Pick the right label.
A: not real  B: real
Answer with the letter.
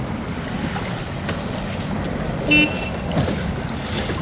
B